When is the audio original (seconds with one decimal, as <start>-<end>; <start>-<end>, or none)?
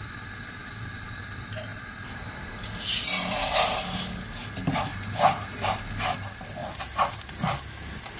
0.0-0.6; 1.2-4.9; 5.8-6.6; 7.5-8.2